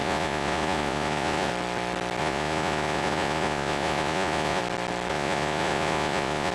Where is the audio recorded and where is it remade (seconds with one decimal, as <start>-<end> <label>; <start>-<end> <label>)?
0.0-1.5 remade; 1.5-2.2 recorded; 2.2-4.6 remade; 4.6-5.1 recorded; 5.1-6.5 remade